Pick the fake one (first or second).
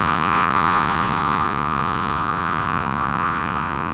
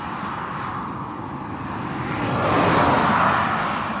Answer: first